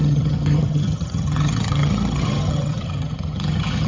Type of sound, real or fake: fake